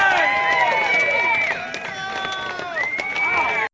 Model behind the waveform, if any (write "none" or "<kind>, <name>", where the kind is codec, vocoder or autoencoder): none